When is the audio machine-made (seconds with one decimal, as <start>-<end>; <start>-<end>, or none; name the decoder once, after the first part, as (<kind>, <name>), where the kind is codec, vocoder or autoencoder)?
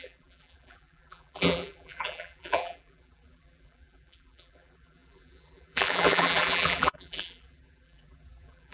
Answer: 0.0-8.7 (vocoder, BigVGAN v2)